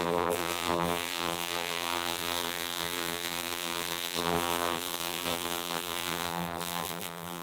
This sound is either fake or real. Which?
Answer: fake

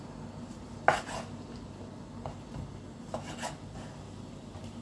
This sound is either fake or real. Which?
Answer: real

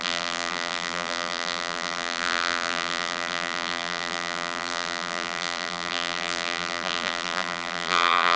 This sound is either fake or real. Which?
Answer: fake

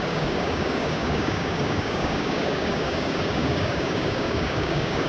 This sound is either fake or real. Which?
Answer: fake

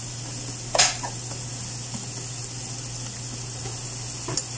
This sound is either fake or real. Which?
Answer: real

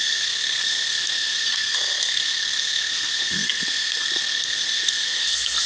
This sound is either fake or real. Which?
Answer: fake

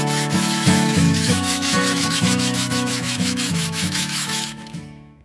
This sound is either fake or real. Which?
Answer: fake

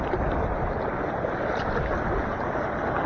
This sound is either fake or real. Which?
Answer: real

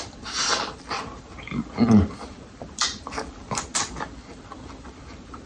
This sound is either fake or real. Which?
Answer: real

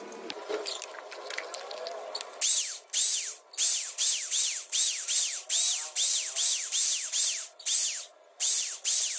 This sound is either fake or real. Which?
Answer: real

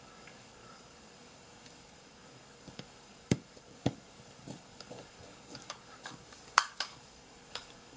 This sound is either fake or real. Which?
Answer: fake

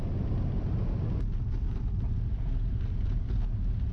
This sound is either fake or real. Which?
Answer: real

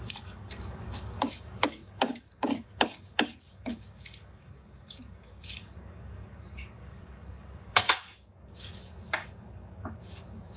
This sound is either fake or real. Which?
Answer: fake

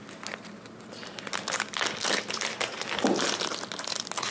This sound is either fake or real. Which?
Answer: real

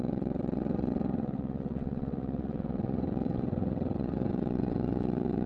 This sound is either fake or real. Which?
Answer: fake